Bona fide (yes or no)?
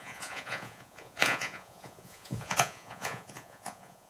no